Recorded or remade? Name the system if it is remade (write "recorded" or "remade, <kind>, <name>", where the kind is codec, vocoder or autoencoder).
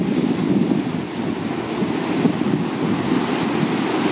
recorded